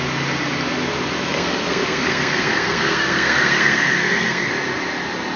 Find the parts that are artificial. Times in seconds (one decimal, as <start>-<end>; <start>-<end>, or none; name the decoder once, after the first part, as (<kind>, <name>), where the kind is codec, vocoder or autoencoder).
1.3-4.5 (codec, SNAC)